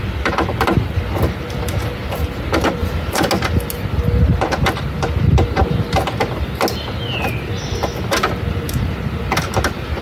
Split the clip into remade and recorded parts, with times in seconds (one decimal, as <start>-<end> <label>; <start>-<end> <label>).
0.0-2.8 recorded; 2.8-3.3 remade; 3.3-10.0 recorded